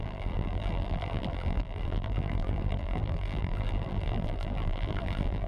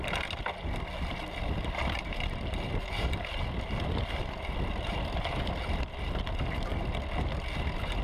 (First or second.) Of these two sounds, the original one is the second